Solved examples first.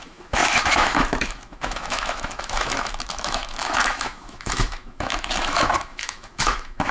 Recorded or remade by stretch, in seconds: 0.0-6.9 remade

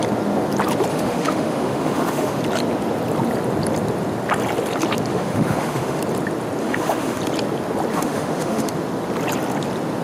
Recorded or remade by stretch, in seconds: 0.0-0.9 recorded; 0.9-2.4 remade; 2.4-5.1 recorded; 5.1-6.0 remade; 6.0-6.6 recorded; 6.6-7.2 remade; 7.2-7.9 recorded; 7.9-8.7 remade; 8.7-10.0 recorded

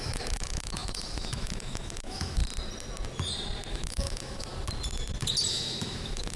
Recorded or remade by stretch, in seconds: 0.0-2.4 remade; 2.4-3.7 recorded; 3.7-4.5 remade; 4.5-5.5 recorded; 5.5-6.4 remade